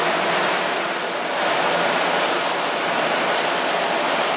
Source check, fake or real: real